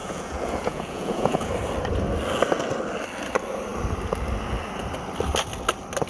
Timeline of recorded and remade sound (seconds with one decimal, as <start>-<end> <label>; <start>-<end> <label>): 0.0-1.5 remade; 1.5-6.1 recorded